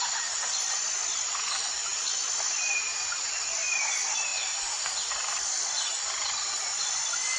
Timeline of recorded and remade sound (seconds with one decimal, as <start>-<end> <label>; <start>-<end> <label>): 0.0-7.4 recorded